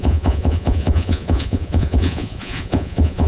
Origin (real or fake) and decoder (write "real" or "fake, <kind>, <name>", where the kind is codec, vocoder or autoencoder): fake, vocoder, Vocos